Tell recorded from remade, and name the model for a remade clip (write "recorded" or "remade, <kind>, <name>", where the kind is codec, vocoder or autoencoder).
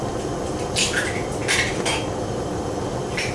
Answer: recorded